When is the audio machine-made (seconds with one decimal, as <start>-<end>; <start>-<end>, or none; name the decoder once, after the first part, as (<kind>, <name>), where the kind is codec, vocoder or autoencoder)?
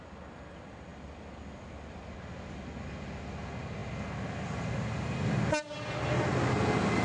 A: none